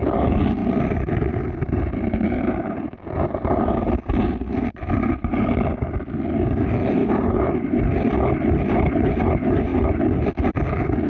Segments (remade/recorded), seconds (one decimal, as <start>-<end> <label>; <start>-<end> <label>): 0.0-0.6 recorded; 0.6-5.5 remade; 5.5-7.0 recorded; 7.0-7.8 remade; 7.8-11.1 recorded